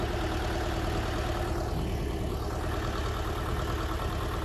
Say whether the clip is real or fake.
real